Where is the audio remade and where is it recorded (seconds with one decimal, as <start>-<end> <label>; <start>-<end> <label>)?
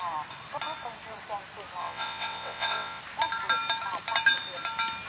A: 0.0-1.8 recorded; 1.8-3.0 remade; 3.0-5.1 recorded